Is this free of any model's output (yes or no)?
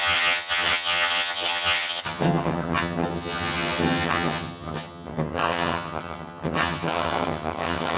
no